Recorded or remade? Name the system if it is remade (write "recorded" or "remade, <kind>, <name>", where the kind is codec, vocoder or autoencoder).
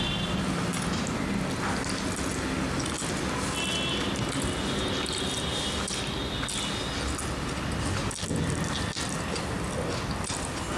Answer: recorded